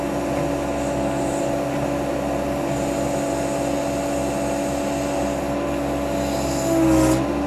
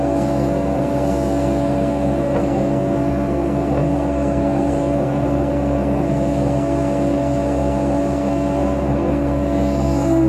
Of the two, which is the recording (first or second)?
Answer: first